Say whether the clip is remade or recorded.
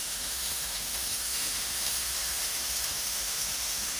remade